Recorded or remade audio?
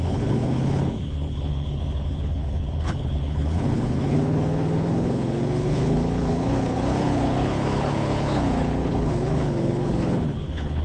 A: remade